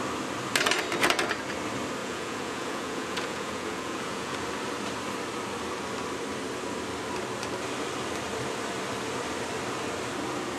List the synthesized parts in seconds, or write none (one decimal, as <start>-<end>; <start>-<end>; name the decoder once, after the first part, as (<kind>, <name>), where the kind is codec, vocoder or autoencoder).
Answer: 2.0-4.4 (vocoder, Vocos)